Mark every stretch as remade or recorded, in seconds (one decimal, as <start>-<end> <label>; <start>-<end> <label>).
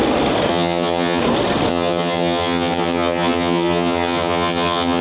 0.0-0.5 recorded; 0.5-1.2 remade; 1.2-1.7 recorded; 1.7-5.0 remade